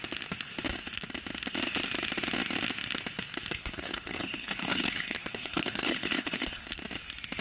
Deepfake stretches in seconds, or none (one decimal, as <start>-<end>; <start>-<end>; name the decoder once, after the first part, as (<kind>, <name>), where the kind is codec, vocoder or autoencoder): 3.6-6.7 (codec, HILCodec)